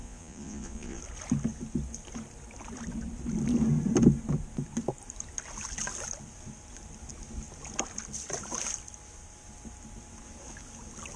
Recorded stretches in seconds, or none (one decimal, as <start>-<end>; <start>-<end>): 1.0-11.2